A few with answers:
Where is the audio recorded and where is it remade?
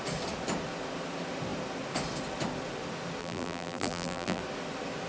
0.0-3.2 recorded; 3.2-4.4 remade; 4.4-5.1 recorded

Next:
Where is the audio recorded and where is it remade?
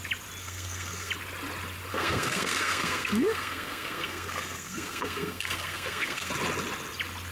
0.0-0.4 recorded; 0.4-1.1 remade; 1.1-1.9 recorded; 1.9-6.3 remade; 6.3-7.3 recorded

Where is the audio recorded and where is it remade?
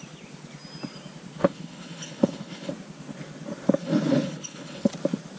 0.0-1.4 recorded; 1.4-2.7 remade; 2.7-3.8 recorded; 3.8-4.9 remade; 4.9-5.4 recorded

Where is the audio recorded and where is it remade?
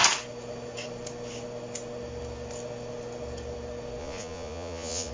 0.0-4.0 recorded; 4.0-5.1 remade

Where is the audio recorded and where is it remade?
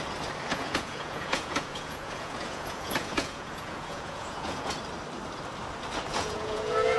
0.0-0.5 recorded; 0.5-4.7 remade; 4.7-6.1 recorded; 6.1-7.0 remade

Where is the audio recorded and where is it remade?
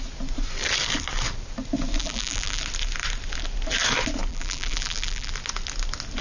0.0-2.0 recorded; 2.0-2.6 remade; 2.6-4.3 recorded; 4.3-5.3 remade; 5.3-6.2 recorded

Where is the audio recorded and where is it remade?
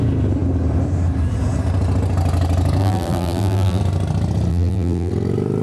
0.0-2.8 recorded; 2.8-3.8 remade; 3.8-4.5 recorded; 4.5-5.1 remade; 5.1-5.6 recorded